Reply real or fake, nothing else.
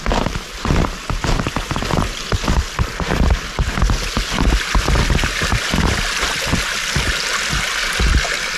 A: real